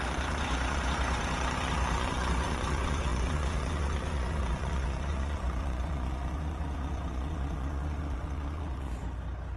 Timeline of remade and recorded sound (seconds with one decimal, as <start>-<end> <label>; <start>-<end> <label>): 0.0-9.0 remade; 9.0-9.6 recorded